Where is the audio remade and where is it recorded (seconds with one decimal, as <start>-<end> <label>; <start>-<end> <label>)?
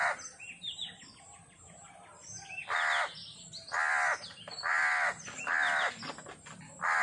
0.0-7.0 recorded